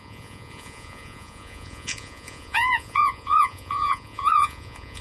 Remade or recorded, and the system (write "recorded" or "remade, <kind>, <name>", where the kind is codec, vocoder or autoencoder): remade, vocoder, Vocos